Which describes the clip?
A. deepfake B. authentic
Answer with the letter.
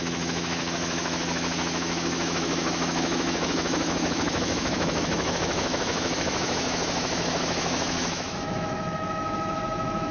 A